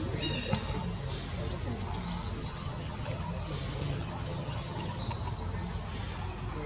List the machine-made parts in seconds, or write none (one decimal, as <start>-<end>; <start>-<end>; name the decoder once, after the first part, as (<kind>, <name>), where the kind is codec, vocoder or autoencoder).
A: 2.4-3.3 (vocoder, HiFi-GAN); 3.8-5.0